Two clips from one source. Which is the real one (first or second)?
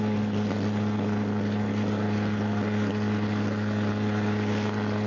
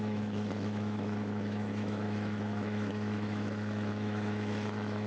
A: first